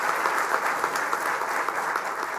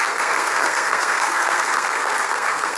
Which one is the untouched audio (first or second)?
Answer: first